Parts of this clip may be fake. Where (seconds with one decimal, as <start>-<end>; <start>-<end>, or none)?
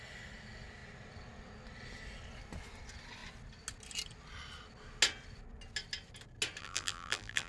6.6-7.5